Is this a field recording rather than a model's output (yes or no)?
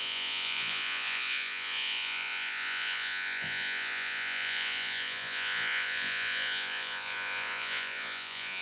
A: no